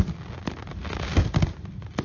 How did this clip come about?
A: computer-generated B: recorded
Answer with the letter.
B